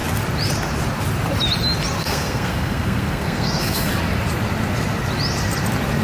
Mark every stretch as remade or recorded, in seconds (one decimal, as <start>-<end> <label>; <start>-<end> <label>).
0.0-2.0 recorded; 2.0-3.9 remade; 3.9-6.0 recorded